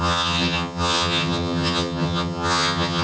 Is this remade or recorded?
remade